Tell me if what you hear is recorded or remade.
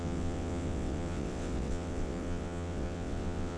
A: remade